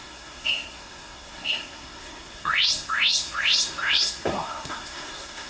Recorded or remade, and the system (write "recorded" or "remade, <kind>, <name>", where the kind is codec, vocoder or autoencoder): remade, codec, SNAC